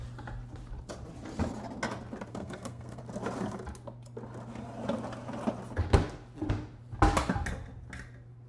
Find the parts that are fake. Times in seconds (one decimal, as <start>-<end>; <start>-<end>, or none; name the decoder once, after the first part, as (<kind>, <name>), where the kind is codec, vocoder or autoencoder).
2.3-3.0 (codec, SNAC)